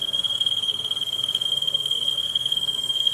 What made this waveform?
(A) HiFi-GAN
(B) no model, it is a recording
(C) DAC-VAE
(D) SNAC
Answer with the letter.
D